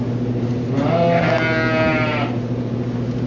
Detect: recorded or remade recorded